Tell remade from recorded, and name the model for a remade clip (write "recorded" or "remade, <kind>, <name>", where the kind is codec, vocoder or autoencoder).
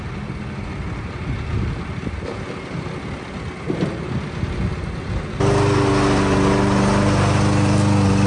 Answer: recorded